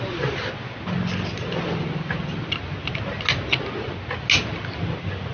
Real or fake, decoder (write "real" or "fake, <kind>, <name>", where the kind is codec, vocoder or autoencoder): real